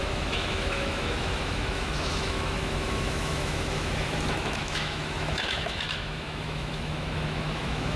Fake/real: fake